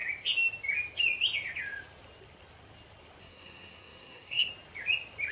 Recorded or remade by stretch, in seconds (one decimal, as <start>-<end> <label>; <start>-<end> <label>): 0.0-3.2 recorded; 3.2-4.5 remade; 4.5-5.3 recorded